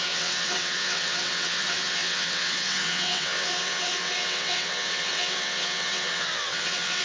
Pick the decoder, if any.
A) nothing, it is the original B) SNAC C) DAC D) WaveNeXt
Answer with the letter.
D